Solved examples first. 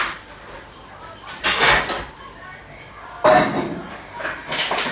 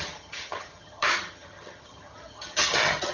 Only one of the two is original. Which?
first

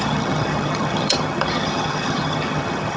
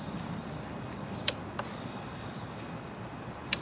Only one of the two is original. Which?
second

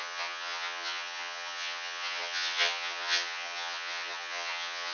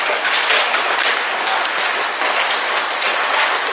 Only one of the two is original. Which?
second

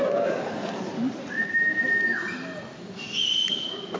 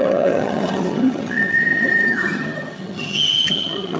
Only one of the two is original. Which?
first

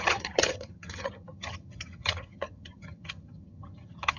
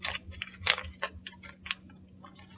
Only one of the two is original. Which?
second